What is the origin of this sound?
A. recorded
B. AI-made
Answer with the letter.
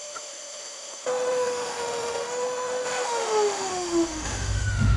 B